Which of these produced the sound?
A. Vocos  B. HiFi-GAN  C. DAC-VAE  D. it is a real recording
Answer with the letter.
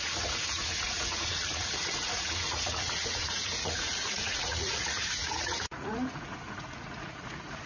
A